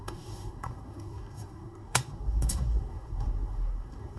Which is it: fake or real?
fake